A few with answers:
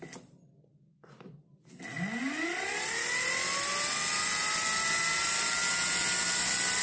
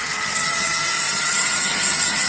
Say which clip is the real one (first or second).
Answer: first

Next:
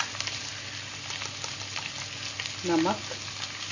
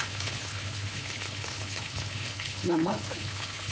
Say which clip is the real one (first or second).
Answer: first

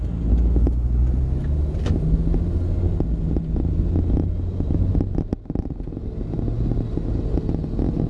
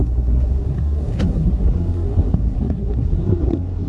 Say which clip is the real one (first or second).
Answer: first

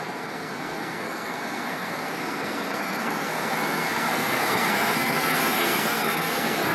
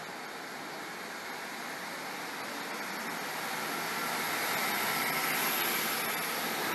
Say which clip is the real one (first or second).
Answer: second